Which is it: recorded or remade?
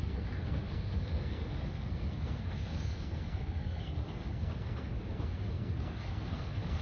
remade